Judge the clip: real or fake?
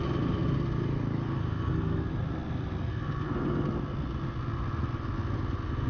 real